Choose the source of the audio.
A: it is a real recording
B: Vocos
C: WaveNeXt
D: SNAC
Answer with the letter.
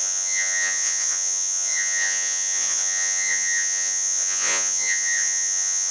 B